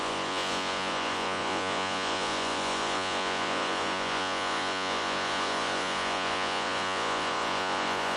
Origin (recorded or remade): remade